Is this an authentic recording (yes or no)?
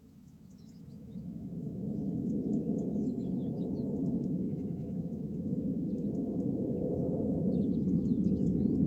no